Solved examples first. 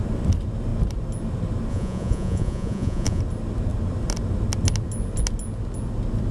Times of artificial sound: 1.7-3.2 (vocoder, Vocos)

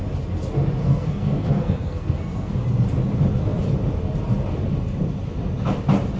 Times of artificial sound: 0.8-2.5 (codec, SNAC)